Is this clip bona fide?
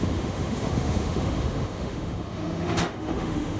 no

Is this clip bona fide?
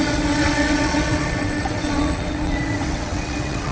no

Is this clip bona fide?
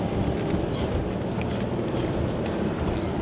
yes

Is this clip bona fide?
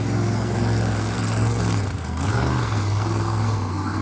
no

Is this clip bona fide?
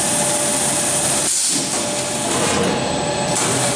yes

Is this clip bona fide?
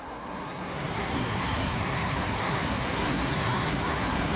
no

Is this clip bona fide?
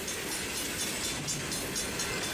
yes